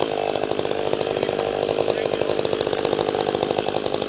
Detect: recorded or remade recorded